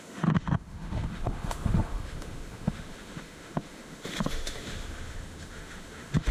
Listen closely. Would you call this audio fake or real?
fake